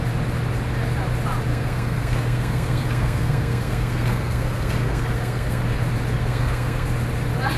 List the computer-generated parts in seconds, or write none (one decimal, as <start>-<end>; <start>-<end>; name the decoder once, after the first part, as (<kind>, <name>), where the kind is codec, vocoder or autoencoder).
1.5-5.6 (codec, SNAC); 6.2-6.9